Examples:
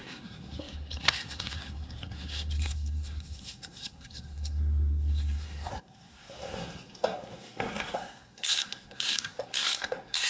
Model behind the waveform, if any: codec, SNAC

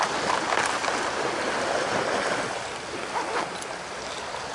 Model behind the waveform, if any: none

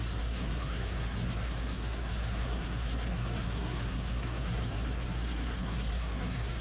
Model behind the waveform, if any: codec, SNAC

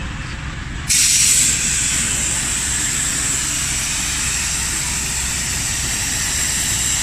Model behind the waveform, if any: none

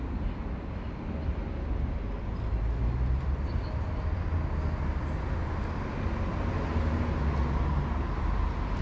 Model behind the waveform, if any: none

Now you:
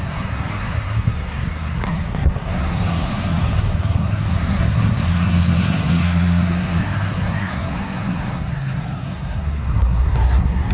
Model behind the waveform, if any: codec, SNAC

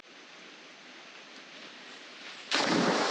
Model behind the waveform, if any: none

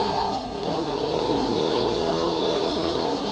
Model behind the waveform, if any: codec, SNAC